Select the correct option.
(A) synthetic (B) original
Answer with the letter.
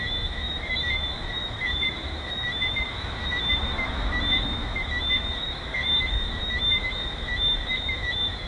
A